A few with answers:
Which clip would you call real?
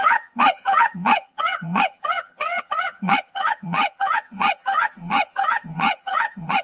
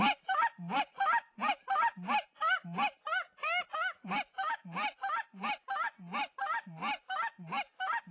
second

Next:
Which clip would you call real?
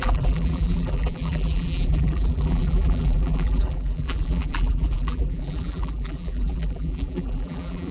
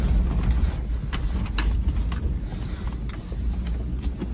second